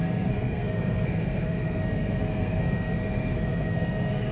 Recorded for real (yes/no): no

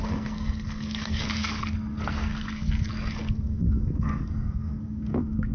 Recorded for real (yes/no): no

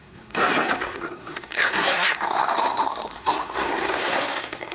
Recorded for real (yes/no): no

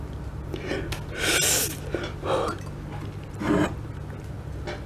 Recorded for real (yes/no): yes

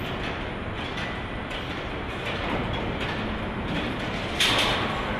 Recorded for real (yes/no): yes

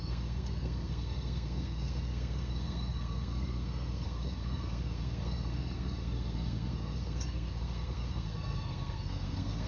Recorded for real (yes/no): no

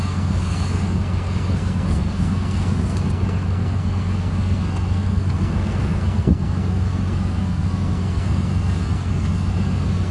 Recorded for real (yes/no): no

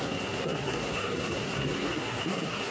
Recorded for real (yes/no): no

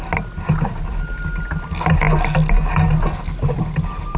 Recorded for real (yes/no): yes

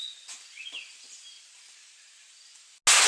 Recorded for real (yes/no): yes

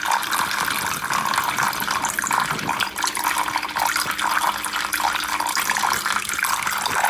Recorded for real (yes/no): yes